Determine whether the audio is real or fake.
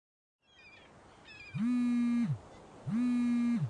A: real